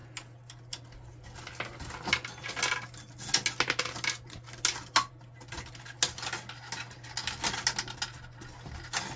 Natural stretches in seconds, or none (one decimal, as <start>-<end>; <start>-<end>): 0.0-9.2